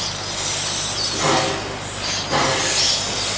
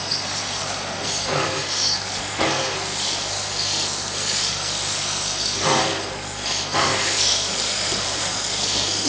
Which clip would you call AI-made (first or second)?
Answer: second